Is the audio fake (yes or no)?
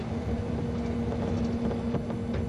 no